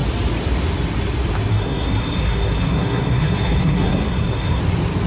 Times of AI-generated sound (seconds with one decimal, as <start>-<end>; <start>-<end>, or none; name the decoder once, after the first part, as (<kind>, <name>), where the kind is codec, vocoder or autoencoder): 1.5-4.6 (codec, SNAC)